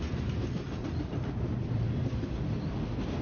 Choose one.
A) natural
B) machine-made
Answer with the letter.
A